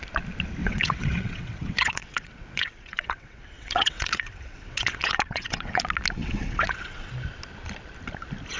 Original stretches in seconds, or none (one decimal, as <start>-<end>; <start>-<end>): 0.0-0.6; 5.8-6.2; 7.1-8.6